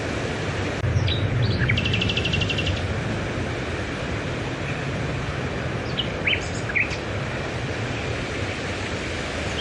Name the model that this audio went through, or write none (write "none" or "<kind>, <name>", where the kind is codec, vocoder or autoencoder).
none